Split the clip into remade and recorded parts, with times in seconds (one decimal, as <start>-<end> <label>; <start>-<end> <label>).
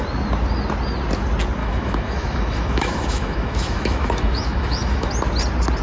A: 0.0-1.6 recorded; 1.6-5.1 remade; 5.1-5.8 recorded